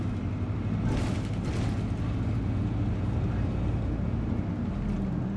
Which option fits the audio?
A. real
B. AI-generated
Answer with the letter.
A